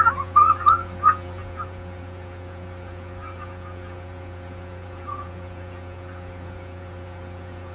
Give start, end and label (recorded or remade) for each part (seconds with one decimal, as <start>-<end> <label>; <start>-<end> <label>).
0.0-7.7 remade